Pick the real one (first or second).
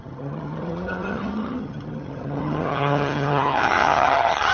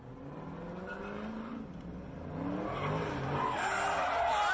second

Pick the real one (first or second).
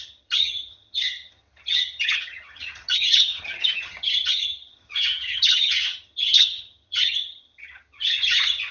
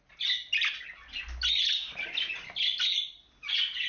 second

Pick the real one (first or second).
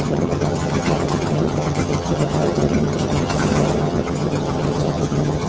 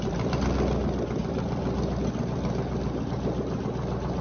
second